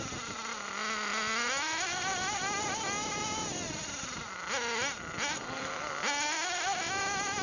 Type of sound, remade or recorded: recorded